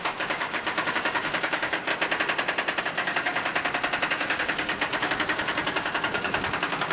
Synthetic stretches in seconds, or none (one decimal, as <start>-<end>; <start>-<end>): 0.0-1.9; 2.8-3.5; 4.1-6.9